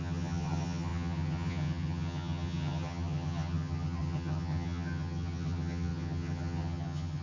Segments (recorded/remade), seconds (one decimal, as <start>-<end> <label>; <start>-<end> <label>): 0.0-7.2 remade